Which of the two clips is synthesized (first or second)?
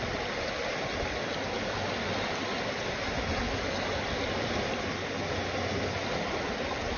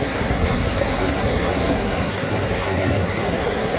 second